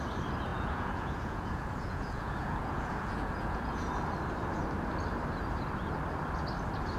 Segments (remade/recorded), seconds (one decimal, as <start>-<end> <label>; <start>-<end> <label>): 0.0-0.5 recorded; 0.5-3.9 remade; 3.9-7.0 recorded